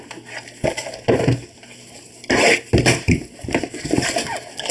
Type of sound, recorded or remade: recorded